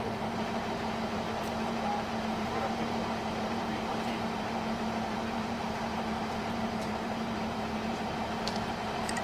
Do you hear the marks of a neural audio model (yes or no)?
yes